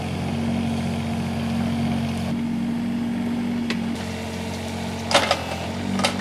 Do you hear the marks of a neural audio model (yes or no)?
no